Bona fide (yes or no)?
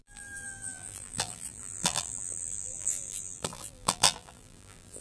no